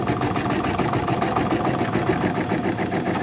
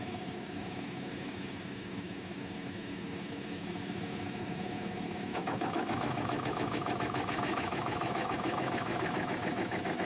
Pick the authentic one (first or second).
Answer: first